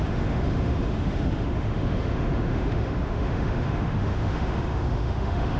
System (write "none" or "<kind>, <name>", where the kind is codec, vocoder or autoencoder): autoencoder, DAC-VAE